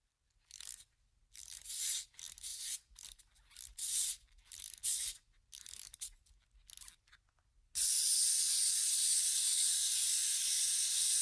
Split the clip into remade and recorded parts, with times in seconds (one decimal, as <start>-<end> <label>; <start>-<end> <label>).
0.0-11.2 recorded